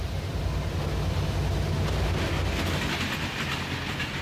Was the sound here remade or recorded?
recorded